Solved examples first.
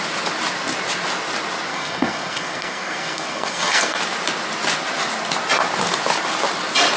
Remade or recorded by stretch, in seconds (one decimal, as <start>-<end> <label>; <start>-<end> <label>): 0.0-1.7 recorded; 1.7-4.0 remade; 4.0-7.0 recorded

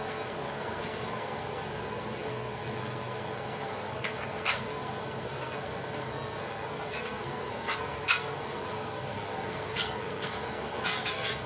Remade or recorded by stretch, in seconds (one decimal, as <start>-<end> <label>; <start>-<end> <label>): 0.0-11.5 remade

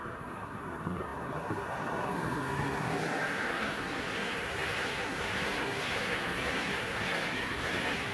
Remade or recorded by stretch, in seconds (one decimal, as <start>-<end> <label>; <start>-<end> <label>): 0.0-8.1 remade